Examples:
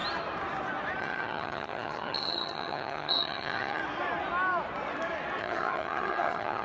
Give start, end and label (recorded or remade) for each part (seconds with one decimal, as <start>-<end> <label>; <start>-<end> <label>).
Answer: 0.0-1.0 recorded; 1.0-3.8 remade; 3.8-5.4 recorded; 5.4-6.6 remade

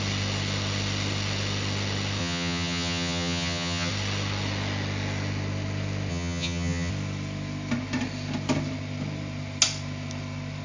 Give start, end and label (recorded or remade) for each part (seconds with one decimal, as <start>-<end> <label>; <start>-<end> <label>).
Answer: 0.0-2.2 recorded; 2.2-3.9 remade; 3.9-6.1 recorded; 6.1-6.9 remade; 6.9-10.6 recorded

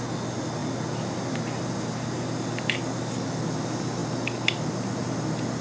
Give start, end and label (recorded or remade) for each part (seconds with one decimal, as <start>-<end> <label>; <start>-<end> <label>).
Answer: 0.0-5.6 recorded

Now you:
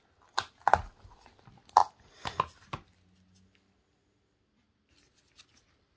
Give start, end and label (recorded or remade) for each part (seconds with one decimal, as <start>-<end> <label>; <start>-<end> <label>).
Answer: 0.0-6.0 recorded

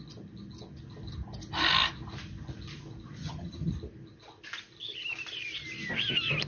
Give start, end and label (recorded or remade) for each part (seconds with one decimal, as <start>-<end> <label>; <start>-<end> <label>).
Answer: 0.0-3.2 recorded; 3.2-3.7 remade; 3.7-6.5 recorded